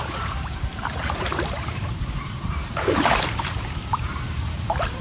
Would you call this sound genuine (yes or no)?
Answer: no